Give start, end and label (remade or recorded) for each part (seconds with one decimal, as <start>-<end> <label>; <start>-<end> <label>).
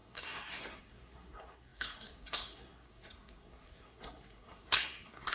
0.0-5.3 remade